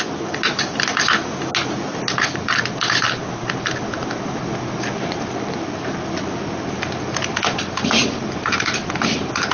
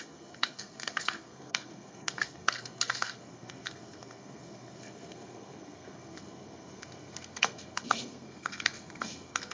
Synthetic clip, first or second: second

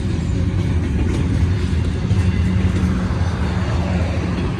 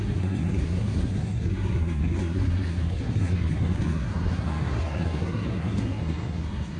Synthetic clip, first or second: second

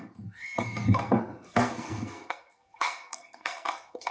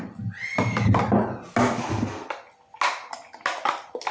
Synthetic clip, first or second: first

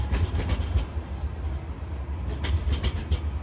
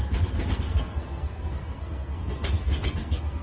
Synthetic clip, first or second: second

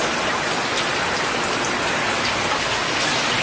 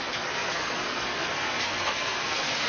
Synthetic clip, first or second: second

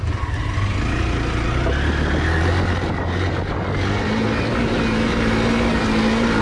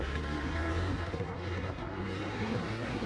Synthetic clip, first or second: second